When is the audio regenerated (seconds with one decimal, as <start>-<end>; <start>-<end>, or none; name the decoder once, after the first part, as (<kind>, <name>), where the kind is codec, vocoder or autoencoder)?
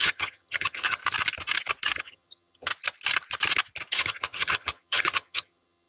0.0-1.0 (vocoder, HiFi-GAN); 2.0-2.7; 3.9-5.9